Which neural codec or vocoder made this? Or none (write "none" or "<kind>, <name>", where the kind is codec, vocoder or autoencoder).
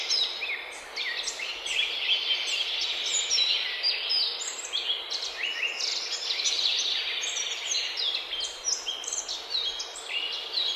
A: none